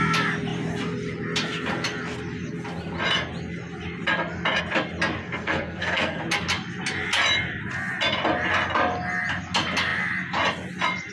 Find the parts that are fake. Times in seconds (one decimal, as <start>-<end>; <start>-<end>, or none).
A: 5.2-6.2